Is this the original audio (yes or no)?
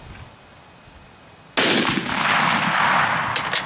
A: yes